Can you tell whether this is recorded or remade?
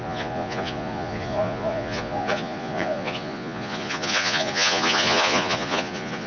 remade